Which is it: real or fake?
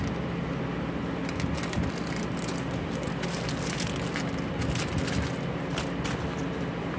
real